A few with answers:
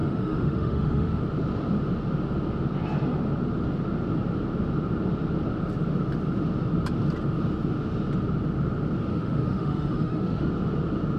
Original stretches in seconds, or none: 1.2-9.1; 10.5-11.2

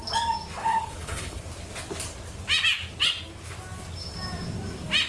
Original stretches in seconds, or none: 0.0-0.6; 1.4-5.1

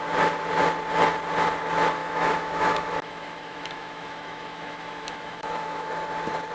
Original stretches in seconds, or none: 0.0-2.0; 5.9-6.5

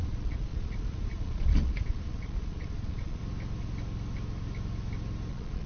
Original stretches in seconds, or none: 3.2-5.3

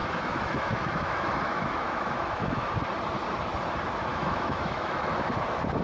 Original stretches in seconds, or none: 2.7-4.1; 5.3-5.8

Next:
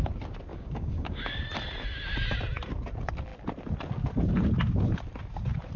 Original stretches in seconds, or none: 0.0-0.5; 1.4-5.8

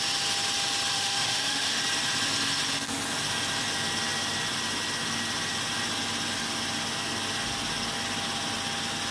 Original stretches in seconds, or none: 0.0-0.9; 1.8-9.1